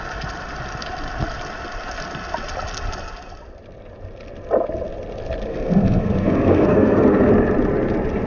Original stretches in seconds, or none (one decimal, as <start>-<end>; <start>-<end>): 0.0-5.5; 7.3-8.3